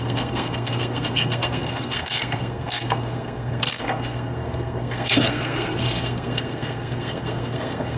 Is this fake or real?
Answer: fake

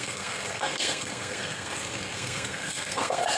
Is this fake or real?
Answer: fake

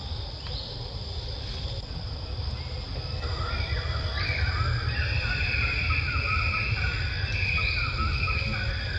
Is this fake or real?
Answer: real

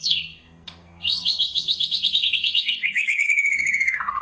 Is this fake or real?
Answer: fake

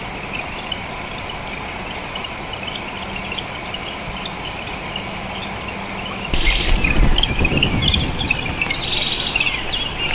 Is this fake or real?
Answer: real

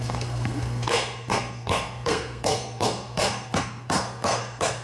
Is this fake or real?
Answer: fake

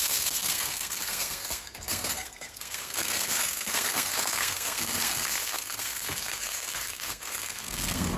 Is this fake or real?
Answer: fake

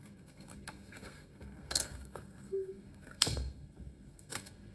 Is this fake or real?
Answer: fake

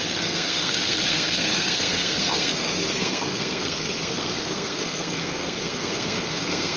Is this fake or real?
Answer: fake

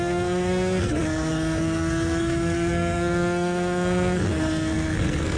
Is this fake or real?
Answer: fake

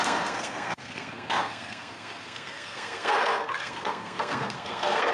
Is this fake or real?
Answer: fake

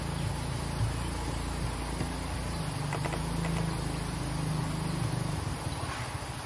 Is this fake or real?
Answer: real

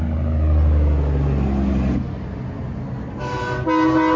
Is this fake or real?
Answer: real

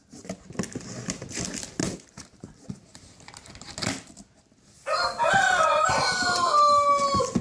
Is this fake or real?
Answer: real